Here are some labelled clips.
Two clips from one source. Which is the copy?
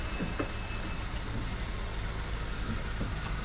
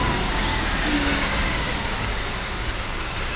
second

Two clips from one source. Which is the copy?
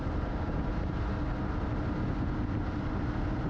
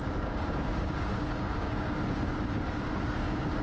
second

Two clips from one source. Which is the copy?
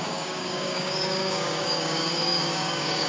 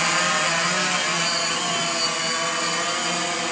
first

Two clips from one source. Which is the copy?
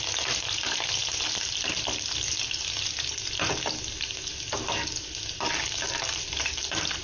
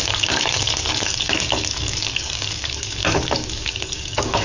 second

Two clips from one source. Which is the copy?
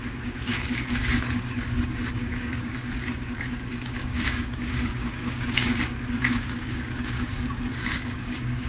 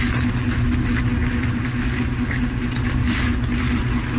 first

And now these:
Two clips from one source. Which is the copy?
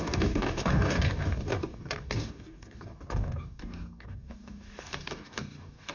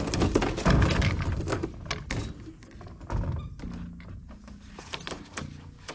first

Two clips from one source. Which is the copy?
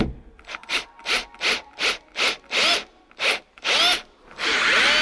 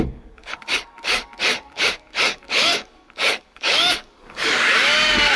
second